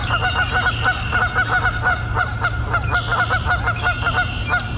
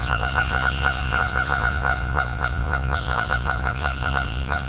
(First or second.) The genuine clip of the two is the first